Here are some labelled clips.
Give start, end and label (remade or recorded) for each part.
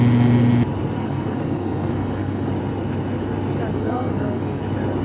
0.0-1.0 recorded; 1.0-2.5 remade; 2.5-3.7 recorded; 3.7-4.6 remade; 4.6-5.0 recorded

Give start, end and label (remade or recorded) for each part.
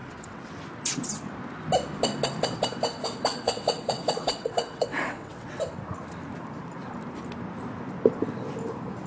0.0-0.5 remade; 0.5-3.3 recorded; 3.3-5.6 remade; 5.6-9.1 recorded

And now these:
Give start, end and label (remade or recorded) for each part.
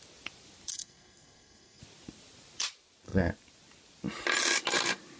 0.0-0.7 recorded; 0.7-1.8 remade; 1.8-5.2 recorded